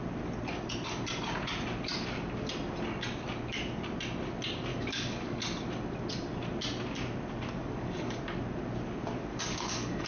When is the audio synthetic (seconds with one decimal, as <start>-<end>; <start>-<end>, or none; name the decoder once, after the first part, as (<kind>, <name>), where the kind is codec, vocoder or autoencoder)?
4.7-5.4 (codec, DAC); 7.6-8.2; 9.3-10.1